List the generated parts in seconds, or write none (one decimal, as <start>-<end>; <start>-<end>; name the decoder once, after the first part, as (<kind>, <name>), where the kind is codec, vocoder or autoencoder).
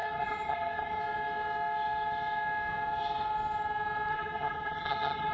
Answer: 0.0-1.0 (vocoder, HiFi-GAN); 4.1-5.3